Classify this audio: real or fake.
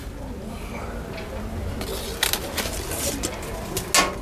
real